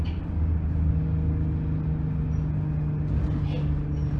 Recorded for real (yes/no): yes